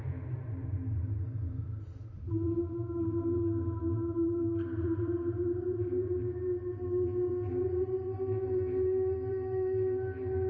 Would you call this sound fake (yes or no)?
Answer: yes